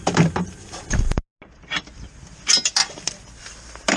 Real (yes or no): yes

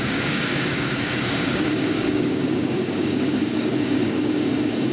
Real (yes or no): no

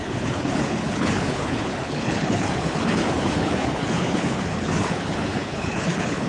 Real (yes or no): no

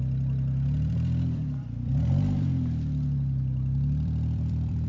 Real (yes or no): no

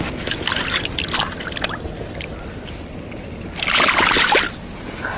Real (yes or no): yes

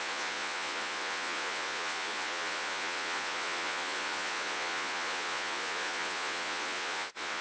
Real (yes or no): no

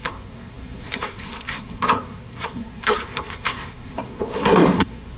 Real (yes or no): no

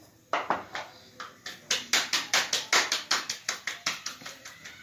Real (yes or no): yes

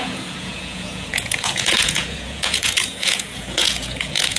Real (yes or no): no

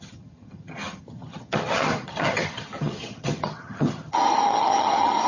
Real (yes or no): no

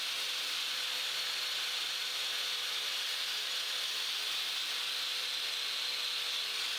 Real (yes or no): yes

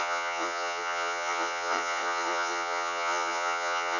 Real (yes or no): no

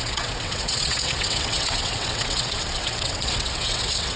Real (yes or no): no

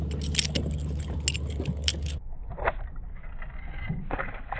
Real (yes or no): yes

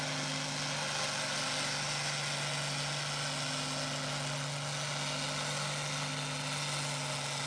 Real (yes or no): yes